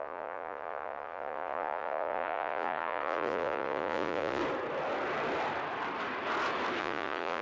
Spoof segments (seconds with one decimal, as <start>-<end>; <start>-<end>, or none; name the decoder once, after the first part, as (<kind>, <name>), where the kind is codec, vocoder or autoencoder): 0.0-4.4 (vocoder, Vocos); 6.8-7.4